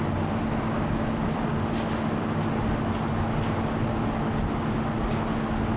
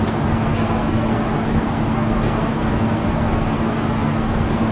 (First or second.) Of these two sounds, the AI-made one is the second